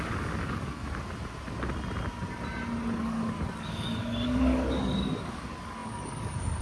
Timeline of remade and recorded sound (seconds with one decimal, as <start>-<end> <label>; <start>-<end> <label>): 0.0-0.8 remade; 0.8-3.0 recorded; 3.0-6.6 remade